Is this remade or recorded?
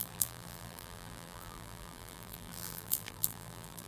remade